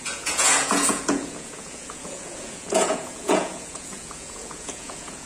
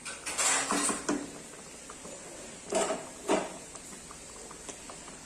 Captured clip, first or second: second